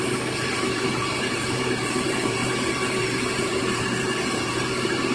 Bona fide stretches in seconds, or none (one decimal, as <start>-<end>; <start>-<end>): 2.4-3.0